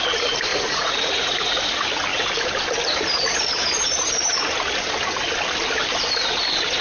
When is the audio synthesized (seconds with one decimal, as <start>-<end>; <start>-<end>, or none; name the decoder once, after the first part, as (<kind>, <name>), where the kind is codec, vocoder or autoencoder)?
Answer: 0.5-1.6 (vocoder, Vocos)